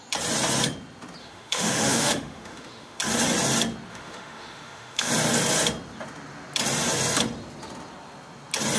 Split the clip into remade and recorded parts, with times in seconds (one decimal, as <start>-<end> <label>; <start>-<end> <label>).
0.0-1.2 recorded; 1.2-3.0 remade; 3.0-3.9 recorded; 3.9-5.1 remade; 5.1-8.8 recorded